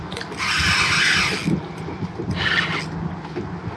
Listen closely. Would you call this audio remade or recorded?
recorded